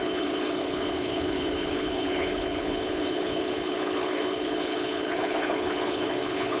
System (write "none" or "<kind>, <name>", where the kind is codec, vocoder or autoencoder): codec, HILCodec